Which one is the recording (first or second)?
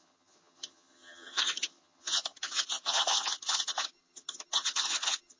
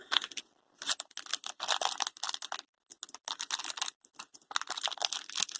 second